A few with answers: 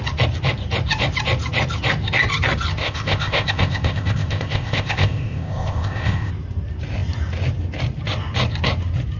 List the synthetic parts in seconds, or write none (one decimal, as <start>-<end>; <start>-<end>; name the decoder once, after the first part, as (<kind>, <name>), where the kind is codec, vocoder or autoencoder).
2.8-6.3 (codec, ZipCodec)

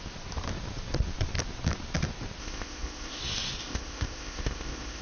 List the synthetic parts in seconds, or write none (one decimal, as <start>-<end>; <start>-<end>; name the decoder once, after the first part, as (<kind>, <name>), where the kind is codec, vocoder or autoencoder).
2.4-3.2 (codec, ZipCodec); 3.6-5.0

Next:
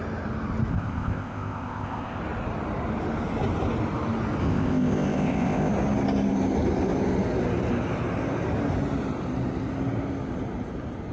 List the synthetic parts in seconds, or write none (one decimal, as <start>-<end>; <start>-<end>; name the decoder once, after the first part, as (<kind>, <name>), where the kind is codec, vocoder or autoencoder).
0.7-2.2 (codec, ZipCodec); 4.4-5.7

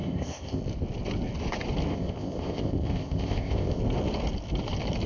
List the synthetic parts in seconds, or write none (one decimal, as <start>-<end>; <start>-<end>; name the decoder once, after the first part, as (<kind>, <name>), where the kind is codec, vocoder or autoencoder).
0.0-0.6 (codec, ZipCodec); 1.9-3.8